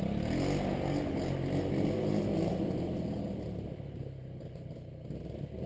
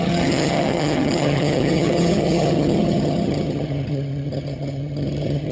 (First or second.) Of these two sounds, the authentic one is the first